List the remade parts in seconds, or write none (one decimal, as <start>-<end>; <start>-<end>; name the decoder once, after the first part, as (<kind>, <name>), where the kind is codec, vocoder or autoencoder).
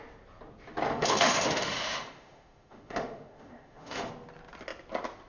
0.9-4.1 (autoencoder, DAC-VAE)